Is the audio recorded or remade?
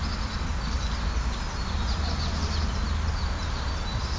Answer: recorded